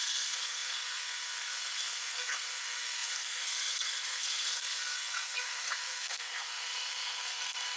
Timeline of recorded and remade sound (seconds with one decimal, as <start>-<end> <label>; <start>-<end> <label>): 0.0-7.8 remade